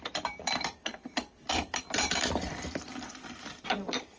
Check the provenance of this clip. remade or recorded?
remade